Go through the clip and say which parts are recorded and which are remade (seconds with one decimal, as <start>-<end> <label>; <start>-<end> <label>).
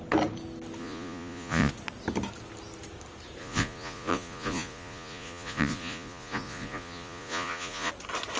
0.0-0.8 recorded; 0.8-1.7 remade; 1.7-3.4 recorded; 3.4-7.9 remade; 7.9-8.4 recorded